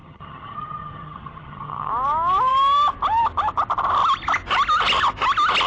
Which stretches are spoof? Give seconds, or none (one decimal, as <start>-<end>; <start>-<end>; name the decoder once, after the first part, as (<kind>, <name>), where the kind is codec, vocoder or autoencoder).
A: 0.0-1.9 (vocoder, HiFi-GAN)